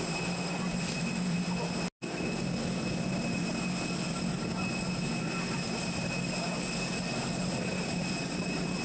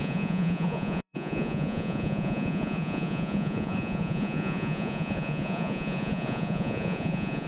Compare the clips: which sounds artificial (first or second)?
second